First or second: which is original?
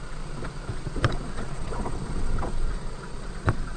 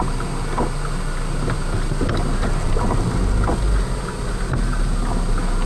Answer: second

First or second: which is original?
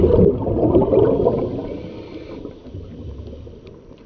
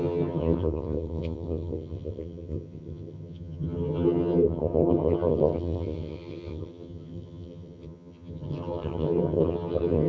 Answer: first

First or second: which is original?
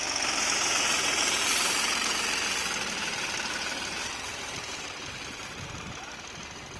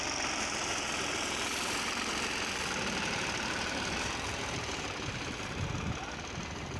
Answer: first